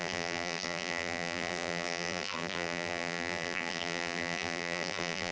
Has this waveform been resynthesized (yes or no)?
yes